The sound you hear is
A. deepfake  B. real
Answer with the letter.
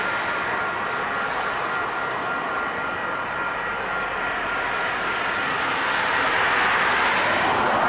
B